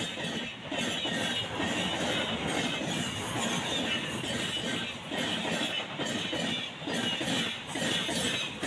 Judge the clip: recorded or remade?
recorded